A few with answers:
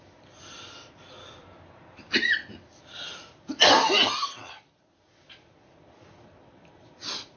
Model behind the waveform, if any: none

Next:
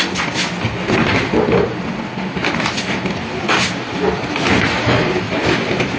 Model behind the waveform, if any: none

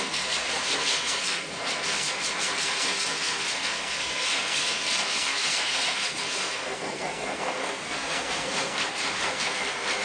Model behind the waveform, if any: codec, SNAC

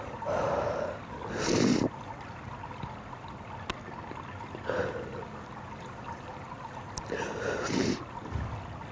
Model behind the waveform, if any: none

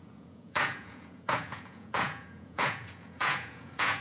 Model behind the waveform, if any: vocoder, Vocos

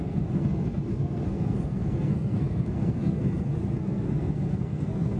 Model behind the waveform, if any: codec, SNAC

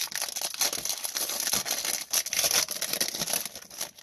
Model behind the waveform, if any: none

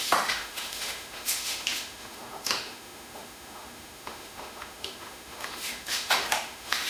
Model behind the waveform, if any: autoencoder, DAC-VAE